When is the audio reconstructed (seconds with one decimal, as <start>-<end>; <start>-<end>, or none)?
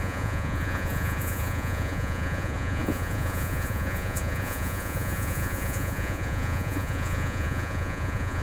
0.0-8.4